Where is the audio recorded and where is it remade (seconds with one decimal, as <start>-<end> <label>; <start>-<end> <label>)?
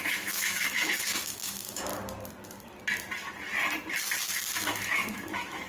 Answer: 0.0-1.9 remade; 1.9-4.6 recorded; 4.6-5.7 remade